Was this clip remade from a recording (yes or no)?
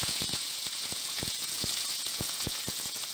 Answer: yes